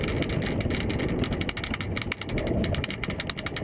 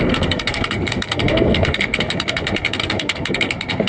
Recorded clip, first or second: first